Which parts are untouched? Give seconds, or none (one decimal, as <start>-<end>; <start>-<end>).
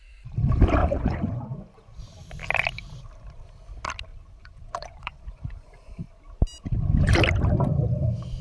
0.0-0.8; 2.0-4.1; 6.0-8.4